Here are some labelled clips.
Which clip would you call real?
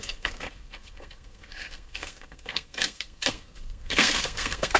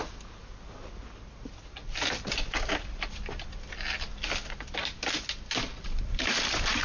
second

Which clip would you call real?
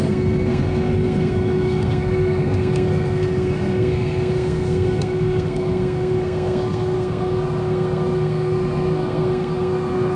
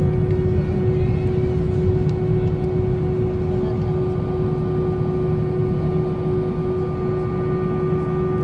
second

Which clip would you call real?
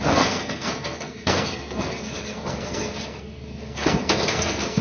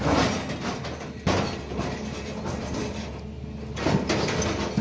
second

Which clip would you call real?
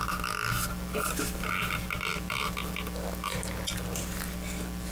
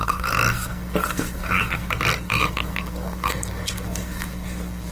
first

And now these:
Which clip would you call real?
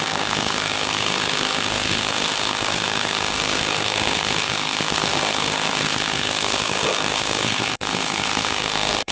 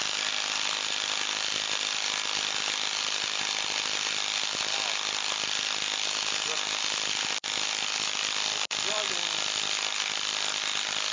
second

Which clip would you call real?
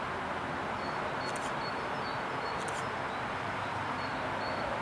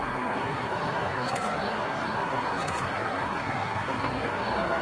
first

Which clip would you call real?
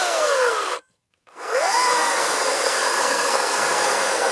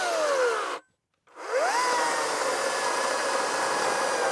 second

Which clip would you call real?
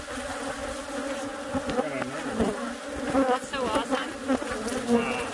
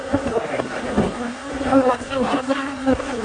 first